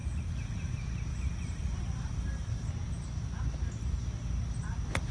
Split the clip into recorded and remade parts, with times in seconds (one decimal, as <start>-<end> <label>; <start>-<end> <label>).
0.0-0.7 remade; 0.7-1.1 recorded; 1.1-2.7 remade; 2.7-5.1 recorded